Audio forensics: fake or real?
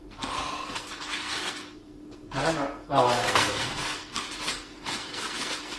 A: fake